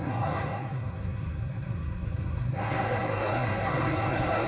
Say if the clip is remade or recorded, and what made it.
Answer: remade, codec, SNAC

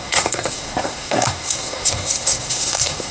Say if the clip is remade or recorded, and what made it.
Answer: remade, codec, SNAC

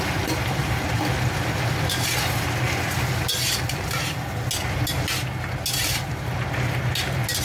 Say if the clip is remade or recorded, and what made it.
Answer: recorded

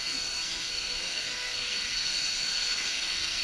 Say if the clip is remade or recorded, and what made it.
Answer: remade, codec, SNAC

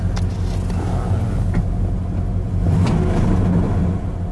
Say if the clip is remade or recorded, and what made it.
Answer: recorded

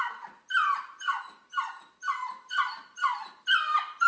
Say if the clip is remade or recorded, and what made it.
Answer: recorded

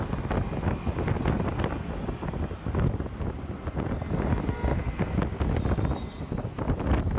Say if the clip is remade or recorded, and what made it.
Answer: recorded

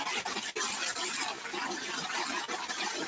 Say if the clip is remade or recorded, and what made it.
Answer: recorded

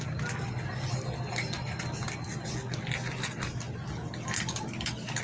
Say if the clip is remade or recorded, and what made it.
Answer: recorded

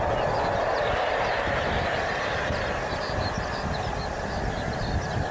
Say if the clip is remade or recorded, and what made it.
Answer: recorded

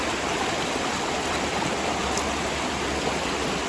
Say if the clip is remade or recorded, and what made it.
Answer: recorded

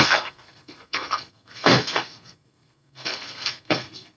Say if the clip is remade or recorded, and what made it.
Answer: remade, codec, SNAC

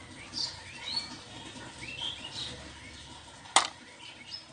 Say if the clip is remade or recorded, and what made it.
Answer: recorded